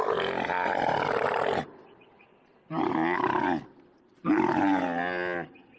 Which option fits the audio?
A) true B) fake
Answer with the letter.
A